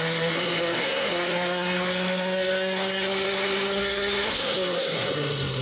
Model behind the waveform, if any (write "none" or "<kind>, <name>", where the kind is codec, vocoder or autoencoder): codec, SNAC